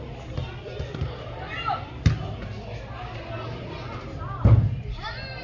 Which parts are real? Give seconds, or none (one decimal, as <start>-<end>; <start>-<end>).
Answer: 0.0-5.4